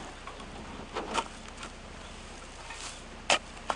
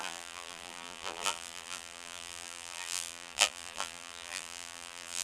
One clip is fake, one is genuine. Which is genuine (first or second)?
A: first